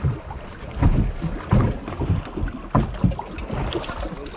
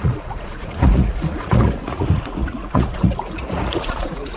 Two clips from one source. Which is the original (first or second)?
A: first